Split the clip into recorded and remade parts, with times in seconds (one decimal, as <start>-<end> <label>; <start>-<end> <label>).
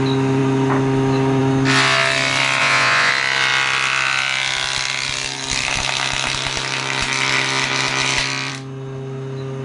0.0-2.6 recorded; 2.6-3.1 remade; 3.1-9.6 recorded